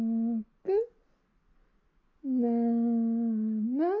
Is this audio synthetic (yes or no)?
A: no